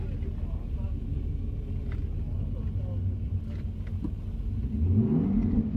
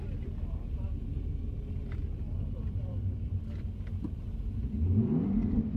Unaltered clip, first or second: first